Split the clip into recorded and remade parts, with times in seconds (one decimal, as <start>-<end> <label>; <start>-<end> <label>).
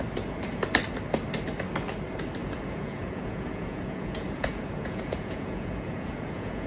0.0-2.4 recorded; 2.4-6.7 remade